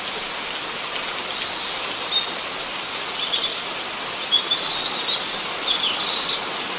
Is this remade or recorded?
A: recorded